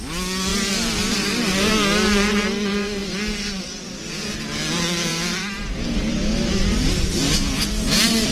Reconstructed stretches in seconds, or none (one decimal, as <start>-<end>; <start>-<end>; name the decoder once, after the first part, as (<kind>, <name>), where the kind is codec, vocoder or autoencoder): 0.5-1.7 (vocoder, BigVGAN v2); 5.1-5.8